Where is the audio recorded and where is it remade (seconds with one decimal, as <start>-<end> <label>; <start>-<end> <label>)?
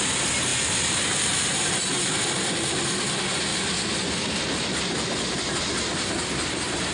0.0-6.9 recorded